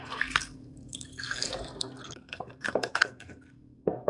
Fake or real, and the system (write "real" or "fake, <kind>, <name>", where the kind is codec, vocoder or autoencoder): fake, codec, SNAC